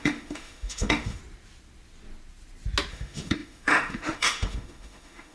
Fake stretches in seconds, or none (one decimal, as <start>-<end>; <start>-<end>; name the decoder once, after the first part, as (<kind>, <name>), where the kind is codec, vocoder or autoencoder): 0.0-1.2 (autoencoder, DAC-VAE); 2.9-5.3